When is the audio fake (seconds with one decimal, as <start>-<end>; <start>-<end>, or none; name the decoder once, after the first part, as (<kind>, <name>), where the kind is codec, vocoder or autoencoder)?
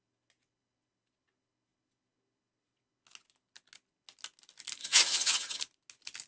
4.8-5.6 (vocoder, HiFi-GAN)